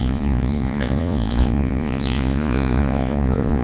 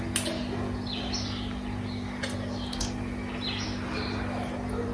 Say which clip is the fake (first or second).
first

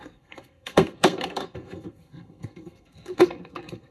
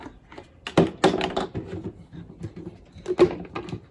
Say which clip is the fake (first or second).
first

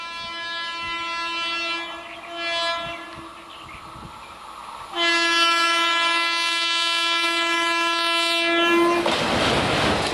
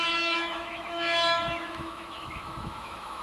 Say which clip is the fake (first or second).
second